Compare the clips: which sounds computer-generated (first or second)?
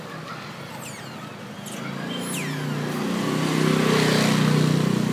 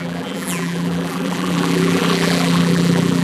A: second